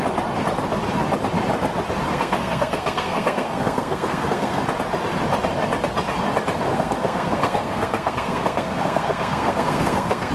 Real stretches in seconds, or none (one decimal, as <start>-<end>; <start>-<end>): 0.0-2.1; 4.6-6.7